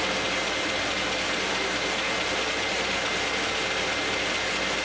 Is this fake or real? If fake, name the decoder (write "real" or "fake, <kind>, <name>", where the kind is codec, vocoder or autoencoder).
real